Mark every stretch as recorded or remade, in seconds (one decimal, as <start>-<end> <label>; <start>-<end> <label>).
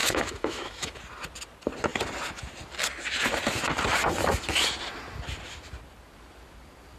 0.0-1.0 remade; 1.0-7.0 recorded